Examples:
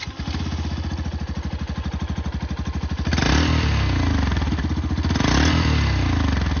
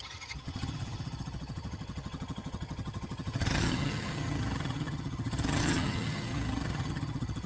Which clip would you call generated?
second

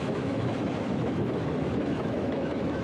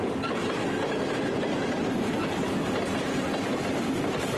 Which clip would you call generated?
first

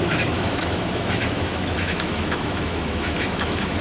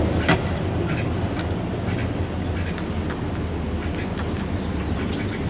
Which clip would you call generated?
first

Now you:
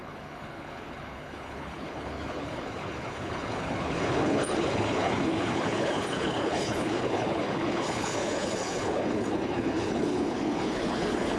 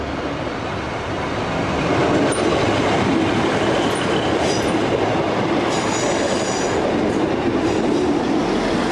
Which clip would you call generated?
first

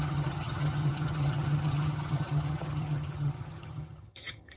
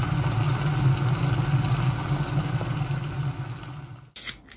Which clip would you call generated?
first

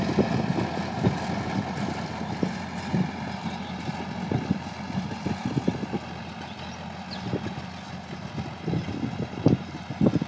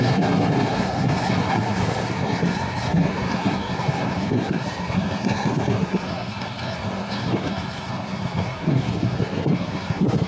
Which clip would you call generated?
second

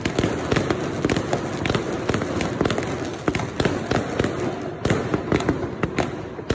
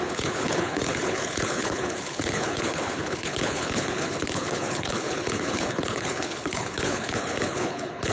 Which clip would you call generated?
second